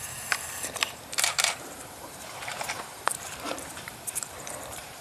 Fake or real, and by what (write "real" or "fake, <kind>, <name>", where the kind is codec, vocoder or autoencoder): fake, vocoder, BigVGAN v2